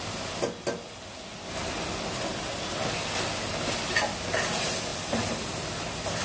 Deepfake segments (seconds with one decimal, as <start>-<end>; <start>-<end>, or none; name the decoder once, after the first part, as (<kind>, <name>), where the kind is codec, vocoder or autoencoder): none